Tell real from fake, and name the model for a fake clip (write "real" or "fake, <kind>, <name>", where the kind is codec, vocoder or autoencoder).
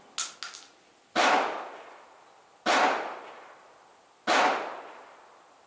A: real